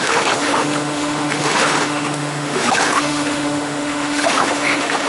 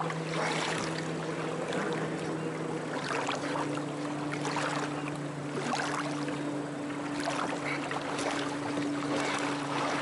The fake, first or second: first